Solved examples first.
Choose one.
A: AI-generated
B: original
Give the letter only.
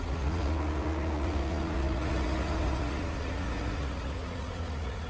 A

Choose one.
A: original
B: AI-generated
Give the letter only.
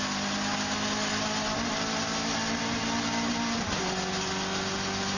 A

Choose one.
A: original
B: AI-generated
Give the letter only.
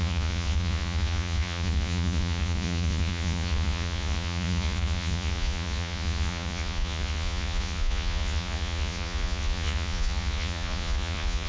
B